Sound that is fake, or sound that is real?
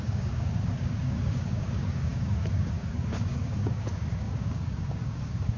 fake